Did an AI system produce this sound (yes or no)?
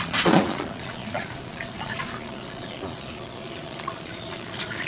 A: yes